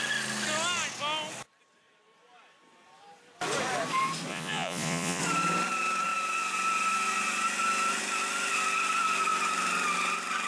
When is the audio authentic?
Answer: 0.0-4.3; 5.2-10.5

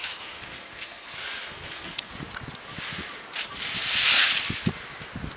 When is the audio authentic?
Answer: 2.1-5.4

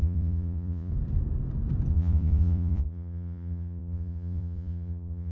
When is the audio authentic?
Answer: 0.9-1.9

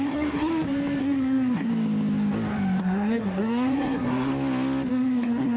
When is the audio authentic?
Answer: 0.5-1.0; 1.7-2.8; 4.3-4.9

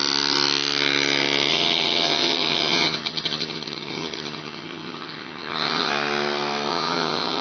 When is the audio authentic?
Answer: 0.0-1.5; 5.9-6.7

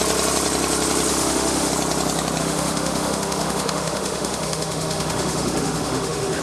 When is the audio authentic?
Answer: 0.0-1.1; 1.7-2.4